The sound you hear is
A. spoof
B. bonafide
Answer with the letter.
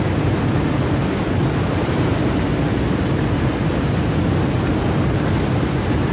B